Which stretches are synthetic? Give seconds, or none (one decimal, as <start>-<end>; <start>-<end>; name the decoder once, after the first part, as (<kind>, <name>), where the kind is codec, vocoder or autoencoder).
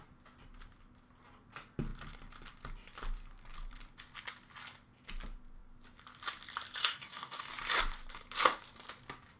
6.8-7.5 (codec, DAC)